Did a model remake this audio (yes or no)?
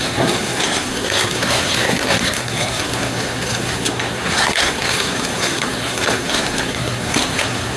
yes